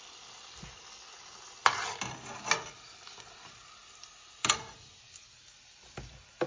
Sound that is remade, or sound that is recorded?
recorded